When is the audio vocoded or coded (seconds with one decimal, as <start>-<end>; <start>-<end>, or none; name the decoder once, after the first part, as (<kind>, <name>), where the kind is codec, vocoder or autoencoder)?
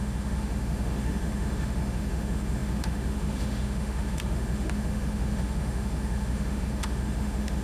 0.0-7.6 (autoencoder, DAC-VAE)